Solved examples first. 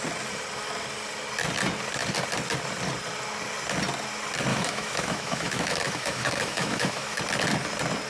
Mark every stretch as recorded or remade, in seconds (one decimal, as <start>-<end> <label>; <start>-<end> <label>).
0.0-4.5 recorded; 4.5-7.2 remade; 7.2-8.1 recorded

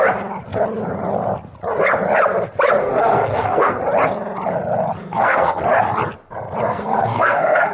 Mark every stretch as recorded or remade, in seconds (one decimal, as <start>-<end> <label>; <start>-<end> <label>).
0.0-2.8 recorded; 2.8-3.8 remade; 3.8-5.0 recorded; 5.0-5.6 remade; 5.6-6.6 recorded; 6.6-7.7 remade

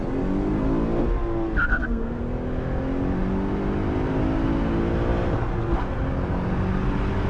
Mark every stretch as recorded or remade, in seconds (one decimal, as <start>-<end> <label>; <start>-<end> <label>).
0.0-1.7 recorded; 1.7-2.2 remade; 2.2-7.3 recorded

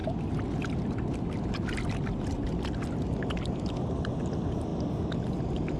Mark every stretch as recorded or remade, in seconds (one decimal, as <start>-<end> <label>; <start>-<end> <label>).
0.0-5.8 recorded